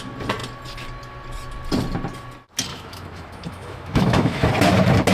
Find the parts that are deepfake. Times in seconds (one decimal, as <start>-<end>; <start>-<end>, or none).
2.7-4.5